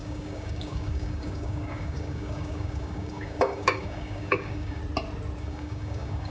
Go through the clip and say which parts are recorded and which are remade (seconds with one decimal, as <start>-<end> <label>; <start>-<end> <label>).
0.0-4.8 remade; 4.8-5.4 recorded; 5.4-6.3 remade